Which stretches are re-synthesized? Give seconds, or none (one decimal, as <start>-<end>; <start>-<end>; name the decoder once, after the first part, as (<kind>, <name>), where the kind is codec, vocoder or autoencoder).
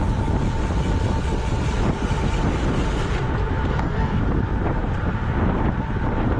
3.7-4.2 (codec, DAC)